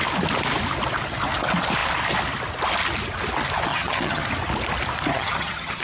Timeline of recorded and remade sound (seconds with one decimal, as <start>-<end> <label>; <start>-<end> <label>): 0.0-3.7 recorded; 3.7-4.2 remade; 4.2-5.1 recorded; 5.1-5.8 remade